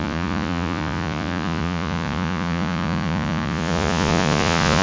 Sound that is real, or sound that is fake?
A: fake